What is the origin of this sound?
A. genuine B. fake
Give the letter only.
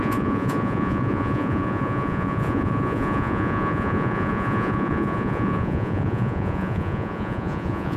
B